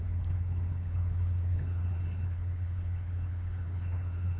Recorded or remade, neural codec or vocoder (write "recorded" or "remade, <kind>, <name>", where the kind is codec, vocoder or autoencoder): remade, codec, HILCodec